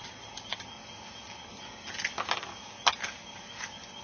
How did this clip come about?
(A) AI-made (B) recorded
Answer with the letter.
B